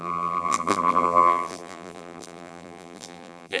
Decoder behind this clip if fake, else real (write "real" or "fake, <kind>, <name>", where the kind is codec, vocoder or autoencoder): fake, vocoder, BigVGAN v2